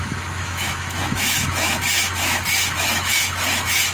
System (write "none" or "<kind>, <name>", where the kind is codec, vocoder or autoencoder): autoencoder, DAC-VAE